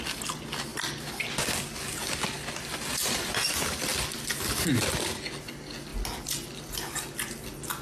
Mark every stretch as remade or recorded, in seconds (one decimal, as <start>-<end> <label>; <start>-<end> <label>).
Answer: 0.0-0.7 recorded; 0.7-1.3 remade; 1.3-7.8 recorded

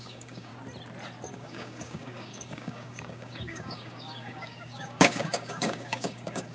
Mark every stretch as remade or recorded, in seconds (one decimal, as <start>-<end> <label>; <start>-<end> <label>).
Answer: 0.0-0.5 remade; 0.5-1.3 recorded; 1.3-6.5 remade

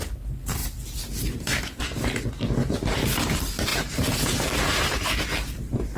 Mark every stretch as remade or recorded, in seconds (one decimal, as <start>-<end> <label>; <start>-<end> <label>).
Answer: 0.0-0.6 recorded; 0.6-1.8 remade; 1.8-3.7 recorded; 3.7-5.2 remade; 5.2-6.0 recorded